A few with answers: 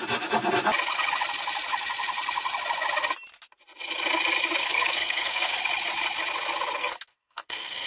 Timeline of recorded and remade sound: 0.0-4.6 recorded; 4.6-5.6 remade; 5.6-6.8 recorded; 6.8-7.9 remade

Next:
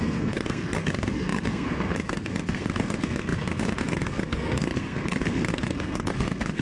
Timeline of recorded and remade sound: 0.0-6.6 remade

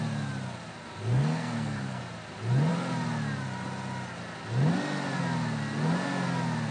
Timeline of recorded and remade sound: 0.0-1.1 recorded; 1.1-2.0 remade; 2.0-6.7 recorded

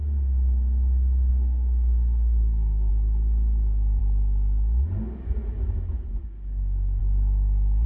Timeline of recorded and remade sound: 0.0-1.3 recorded; 1.3-2.9 remade; 2.9-7.9 recorded

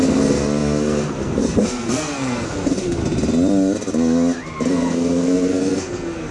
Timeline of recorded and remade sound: 0.0-3.0 remade; 3.0-4.7 recorded; 4.7-6.3 remade